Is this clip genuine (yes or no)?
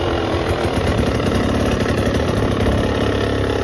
yes